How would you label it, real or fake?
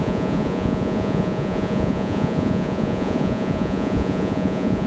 fake